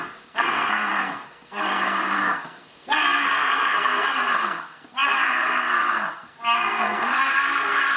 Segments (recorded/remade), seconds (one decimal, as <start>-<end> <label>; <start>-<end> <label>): 0.0-8.0 remade